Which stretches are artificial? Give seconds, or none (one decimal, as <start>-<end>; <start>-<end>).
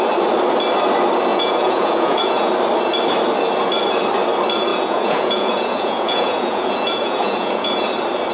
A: 1.3-2.5; 4.7-7.9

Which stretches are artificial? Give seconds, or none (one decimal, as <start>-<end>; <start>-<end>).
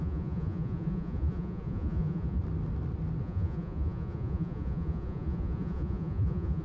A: 0.0-2.4; 3.2-6.6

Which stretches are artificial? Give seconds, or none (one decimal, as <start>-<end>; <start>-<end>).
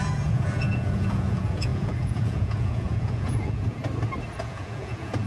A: 0.0-3.8; 4.4-5.3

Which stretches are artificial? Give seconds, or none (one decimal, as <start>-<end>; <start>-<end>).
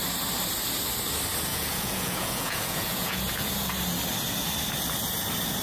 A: 1.5-3.5